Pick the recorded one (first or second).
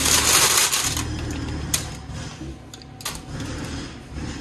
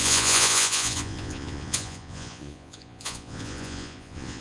first